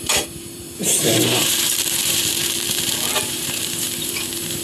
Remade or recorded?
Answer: remade